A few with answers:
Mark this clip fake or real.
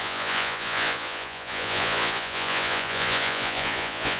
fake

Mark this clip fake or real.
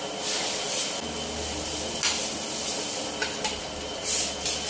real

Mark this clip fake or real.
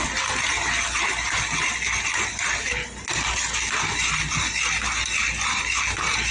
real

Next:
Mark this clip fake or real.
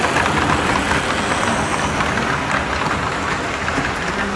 real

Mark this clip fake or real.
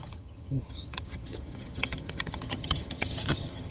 fake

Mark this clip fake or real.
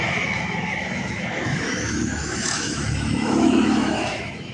fake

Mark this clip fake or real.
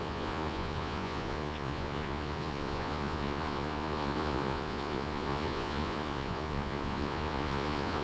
fake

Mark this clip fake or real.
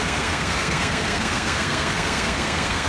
fake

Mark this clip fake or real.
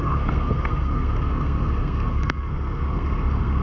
fake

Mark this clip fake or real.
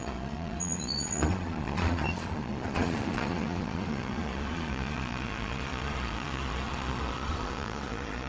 fake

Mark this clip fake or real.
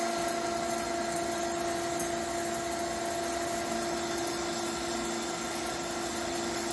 real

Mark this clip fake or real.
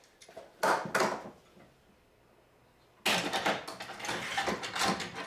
real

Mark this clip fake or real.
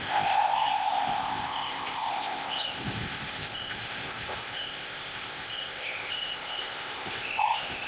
fake